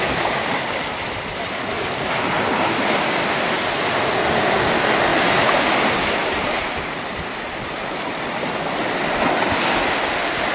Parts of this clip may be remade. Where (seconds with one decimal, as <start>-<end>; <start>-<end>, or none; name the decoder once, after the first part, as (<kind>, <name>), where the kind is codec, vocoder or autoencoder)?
5.1-5.6 (vocoder, BigVGAN v2); 6.2-7.3